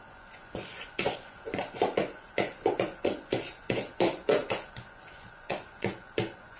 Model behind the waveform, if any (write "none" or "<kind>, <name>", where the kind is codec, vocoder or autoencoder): vocoder, Vocos